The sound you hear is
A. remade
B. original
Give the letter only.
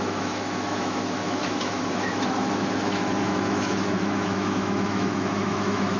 A